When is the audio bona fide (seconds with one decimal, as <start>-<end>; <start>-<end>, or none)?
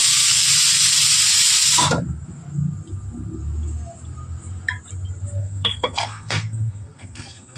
0.5-5.4